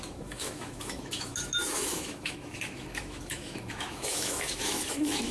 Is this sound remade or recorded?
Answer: remade